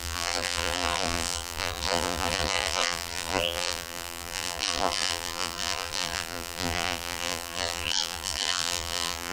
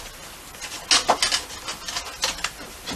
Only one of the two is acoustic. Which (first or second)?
second